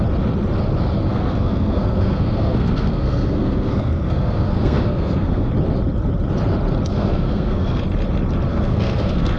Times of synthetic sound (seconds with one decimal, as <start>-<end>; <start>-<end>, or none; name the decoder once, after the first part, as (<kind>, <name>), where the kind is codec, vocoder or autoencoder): 1.1-5.5 (codec, SNAC); 6.9-7.8; 8.5-9.4